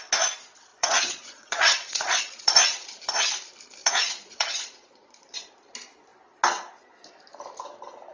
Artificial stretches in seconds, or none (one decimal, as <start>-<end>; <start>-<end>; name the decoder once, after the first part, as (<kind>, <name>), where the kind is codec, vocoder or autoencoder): 0.7-3.0 (vocoder, Vocos); 3.8-5.5